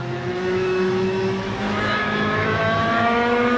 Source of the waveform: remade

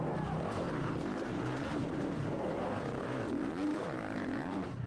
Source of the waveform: remade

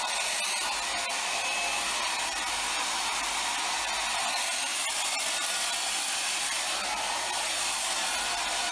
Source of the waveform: recorded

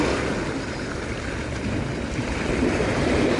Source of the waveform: recorded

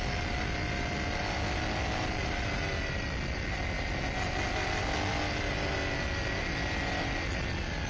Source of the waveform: recorded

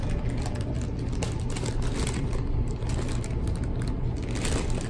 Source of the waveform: recorded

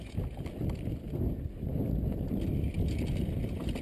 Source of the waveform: recorded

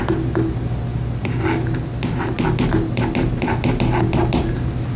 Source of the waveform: recorded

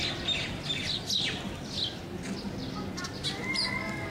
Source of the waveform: recorded